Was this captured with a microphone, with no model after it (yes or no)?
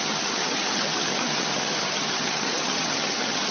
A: no